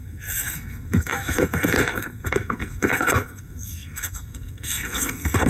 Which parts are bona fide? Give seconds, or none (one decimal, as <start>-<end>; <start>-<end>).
none